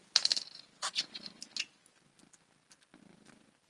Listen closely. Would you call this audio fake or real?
real